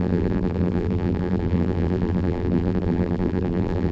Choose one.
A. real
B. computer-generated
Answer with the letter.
B